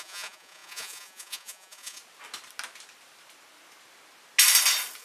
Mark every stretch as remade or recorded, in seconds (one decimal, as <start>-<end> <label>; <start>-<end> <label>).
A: 0.0-2.0 remade; 2.0-5.0 recorded

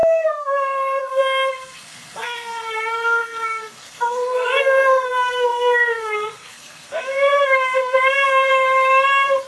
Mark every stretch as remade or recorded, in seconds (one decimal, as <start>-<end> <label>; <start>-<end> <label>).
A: 0.0-8.5 remade; 8.5-9.5 recorded

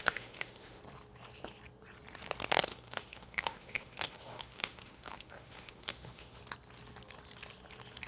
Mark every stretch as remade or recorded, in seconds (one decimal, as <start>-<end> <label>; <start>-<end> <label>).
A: 0.0-0.8 remade; 0.8-2.7 recorded; 2.7-6.4 remade; 6.4-8.1 recorded